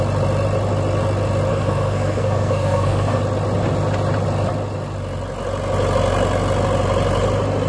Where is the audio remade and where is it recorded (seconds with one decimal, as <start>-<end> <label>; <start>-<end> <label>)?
0.0-1.5 recorded; 1.5-3.2 remade; 3.2-7.7 recorded